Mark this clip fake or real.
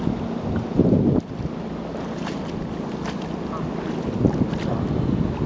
real